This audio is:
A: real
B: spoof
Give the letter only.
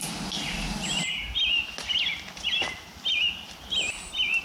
A